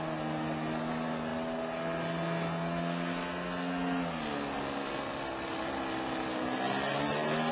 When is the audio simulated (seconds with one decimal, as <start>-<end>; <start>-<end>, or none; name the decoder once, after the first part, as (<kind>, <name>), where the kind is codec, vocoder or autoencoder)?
none